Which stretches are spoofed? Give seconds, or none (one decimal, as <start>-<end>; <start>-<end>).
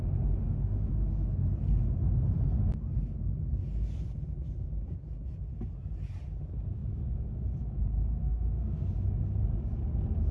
0.4-0.9; 8.2-8.9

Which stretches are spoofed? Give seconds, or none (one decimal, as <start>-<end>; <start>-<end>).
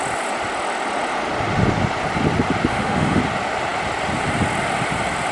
2.7-3.2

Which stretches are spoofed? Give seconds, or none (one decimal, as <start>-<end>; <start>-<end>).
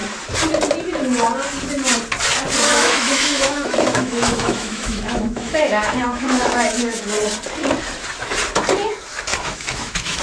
2.7-7.0; 9.3-10.2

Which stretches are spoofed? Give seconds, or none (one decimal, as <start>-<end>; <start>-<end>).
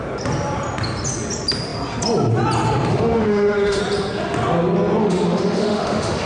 2.9-3.8; 5.0-6.3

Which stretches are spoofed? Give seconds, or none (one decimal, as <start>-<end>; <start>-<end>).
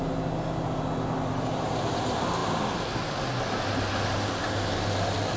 none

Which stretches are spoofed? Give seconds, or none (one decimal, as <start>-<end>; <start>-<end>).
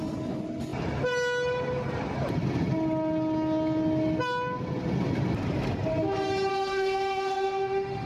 6.5-8.1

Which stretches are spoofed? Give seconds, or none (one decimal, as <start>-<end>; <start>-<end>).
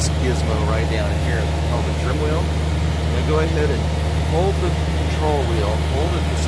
1.2-2.1; 4.3-4.9